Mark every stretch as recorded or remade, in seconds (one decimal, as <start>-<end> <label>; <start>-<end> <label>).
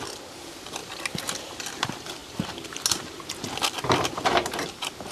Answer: 0.0-2.2 remade; 2.2-3.5 recorded; 3.5-5.1 remade